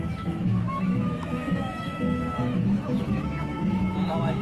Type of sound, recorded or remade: remade